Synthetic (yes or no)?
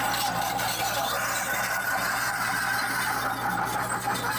no